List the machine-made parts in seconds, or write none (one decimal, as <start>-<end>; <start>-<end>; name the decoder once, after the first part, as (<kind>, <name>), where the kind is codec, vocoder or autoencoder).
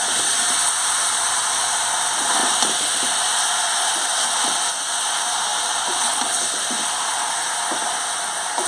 none